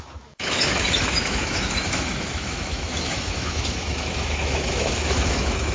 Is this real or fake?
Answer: fake